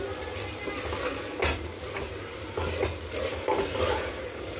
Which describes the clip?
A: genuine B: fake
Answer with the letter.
A